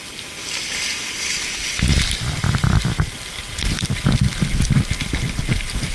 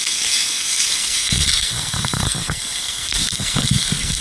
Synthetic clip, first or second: second